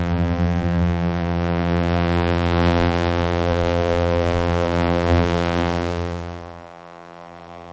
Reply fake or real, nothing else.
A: fake